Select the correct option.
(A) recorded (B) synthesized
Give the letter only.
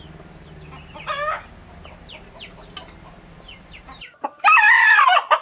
A